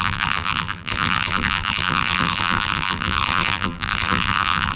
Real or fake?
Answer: fake